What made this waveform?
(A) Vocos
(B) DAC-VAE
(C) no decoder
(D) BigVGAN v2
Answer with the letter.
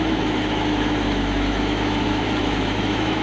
B